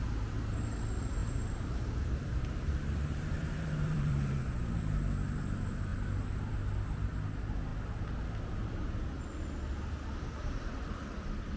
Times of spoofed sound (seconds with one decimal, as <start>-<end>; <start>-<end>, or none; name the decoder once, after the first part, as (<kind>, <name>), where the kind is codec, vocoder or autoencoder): 1.2-4.4 (vocoder, BigVGAN v2)